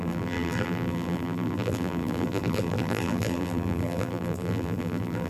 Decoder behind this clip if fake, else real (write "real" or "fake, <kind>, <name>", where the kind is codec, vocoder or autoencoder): fake, vocoder, BigVGAN v2